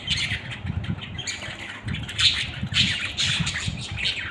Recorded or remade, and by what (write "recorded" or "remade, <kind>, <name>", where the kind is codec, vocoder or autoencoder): recorded